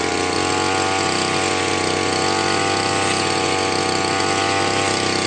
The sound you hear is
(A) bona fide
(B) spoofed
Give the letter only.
A